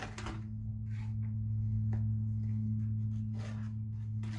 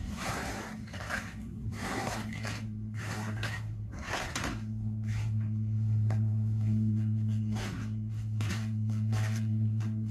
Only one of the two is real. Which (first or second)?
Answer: first